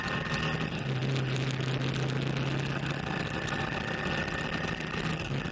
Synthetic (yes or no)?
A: no